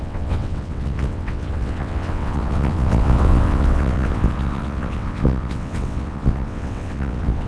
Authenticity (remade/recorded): remade